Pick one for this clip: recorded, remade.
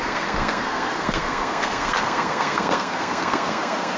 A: remade